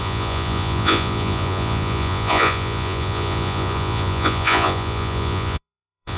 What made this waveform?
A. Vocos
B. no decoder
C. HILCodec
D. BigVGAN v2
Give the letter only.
A